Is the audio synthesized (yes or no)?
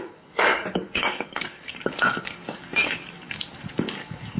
yes